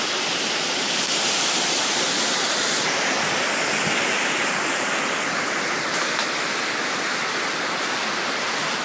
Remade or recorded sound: remade